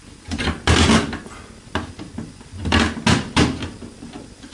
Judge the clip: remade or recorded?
recorded